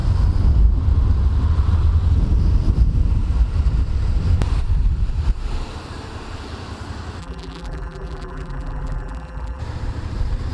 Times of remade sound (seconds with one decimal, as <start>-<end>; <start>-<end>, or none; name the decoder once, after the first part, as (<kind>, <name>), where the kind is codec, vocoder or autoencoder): 7.2-9.6 (vocoder, BigVGAN v2)